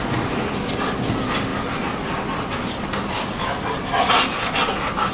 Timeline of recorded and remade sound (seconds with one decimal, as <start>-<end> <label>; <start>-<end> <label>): 0.0-5.1 recorded